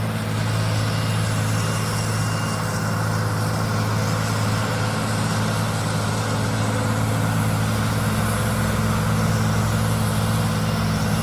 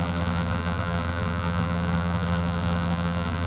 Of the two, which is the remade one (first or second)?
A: second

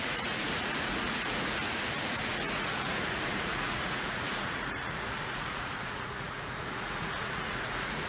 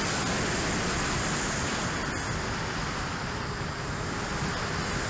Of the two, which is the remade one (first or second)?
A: first